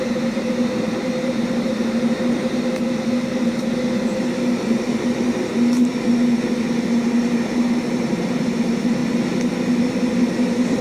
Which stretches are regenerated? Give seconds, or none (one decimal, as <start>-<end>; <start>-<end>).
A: 0.0-9.0; 10.3-10.8